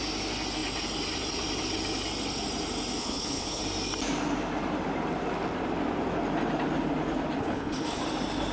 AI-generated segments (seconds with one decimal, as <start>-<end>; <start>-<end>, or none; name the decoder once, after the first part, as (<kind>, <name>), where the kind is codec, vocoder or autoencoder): 3.0-3.6 (codec, HILCodec); 7.4-8.0